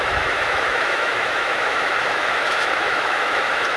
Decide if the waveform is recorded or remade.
remade